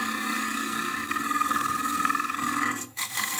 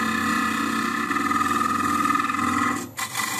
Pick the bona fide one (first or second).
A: second